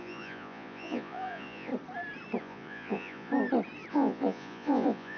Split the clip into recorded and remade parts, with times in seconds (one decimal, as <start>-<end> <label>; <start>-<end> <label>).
0.0-1.7 remade; 1.7-2.4 recorded; 2.4-3.3 remade; 3.3-3.9 recorded; 3.9-5.2 remade